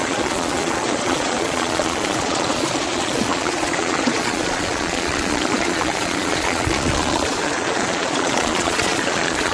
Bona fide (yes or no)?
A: no